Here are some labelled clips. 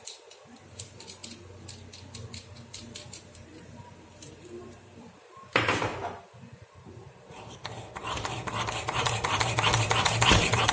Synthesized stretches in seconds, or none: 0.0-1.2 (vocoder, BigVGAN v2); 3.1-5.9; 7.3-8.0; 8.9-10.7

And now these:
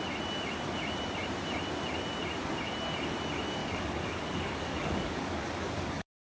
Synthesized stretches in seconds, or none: 3.6-6.2 (codec, DAC)

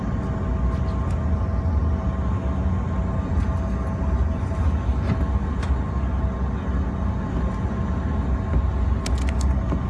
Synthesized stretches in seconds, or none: none

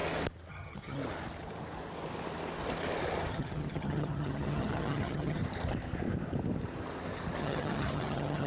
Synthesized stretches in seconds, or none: 0.5-1.0 (vocoder, HiFi-GAN); 3.3-5.4; 7.4-8.5

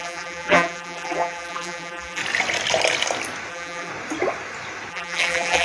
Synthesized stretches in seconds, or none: 0.0-2.2 (vocoder, BigVGAN v2); 3.5-3.9; 4.9-5.6

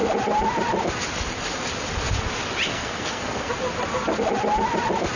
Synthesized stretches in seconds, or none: 2.7-3.5 (codec, SNAC)

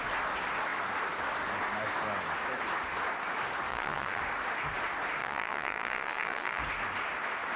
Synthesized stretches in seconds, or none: 3.7-4.2 (vocoder, Vocos); 5.2-6.6

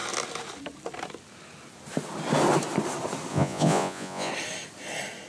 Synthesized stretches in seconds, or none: 3.3-4.3 (vocoder, Vocos)